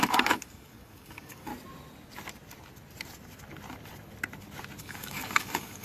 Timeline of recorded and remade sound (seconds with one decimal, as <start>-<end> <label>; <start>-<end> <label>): 0.0-1.5 remade; 1.5-4.8 recorded; 4.8-5.8 remade

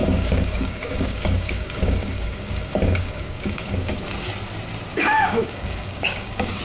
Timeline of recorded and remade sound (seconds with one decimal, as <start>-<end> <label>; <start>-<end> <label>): 0.0-4.0 remade; 4.0-4.9 recorded; 4.9-6.6 remade

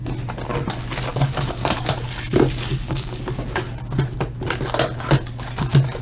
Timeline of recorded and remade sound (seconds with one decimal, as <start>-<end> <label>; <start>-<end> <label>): 0.0-1.1 recorded; 1.1-1.9 remade; 1.9-2.7 recorded; 2.7-3.2 remade; 3.2-6.0 recorded

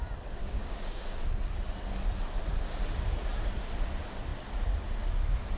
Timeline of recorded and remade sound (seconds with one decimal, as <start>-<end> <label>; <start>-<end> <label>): 0.0-0.4 recorded; 0.4-1.0 remade; 1.0-5.6 recorded

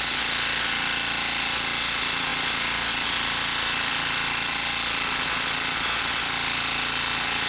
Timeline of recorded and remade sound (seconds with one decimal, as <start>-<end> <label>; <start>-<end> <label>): 0.0-7.5 recorded